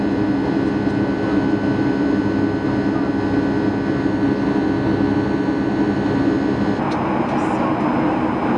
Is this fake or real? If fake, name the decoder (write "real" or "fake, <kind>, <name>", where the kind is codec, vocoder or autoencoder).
real